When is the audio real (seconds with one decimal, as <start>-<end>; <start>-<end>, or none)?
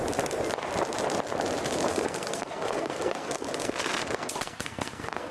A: 0.0-1.9